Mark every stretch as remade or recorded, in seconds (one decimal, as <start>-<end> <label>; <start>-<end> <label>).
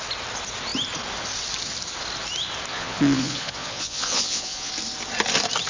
0.0-2.7 recorded; 2.7-4.7 remade; 4.7-5.7 recorded